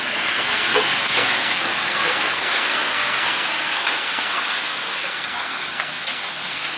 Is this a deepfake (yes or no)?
yes